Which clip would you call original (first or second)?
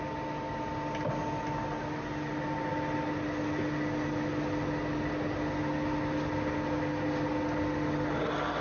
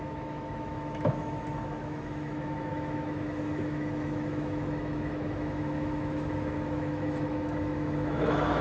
first